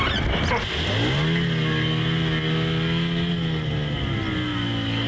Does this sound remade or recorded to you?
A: recorded